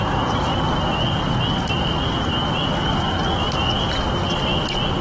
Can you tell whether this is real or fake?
real